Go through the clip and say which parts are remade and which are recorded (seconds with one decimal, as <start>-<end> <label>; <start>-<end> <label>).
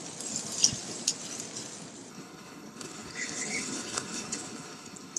0.0-2.1 recorded; 2.1-5.2 remade